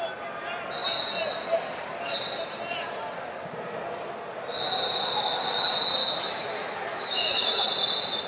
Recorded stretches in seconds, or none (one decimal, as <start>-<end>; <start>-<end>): 0.0-6.0; 7.7-8.3